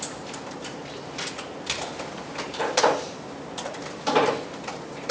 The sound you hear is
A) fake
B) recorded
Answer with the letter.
B